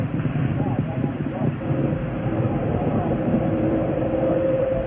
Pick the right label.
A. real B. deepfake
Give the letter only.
B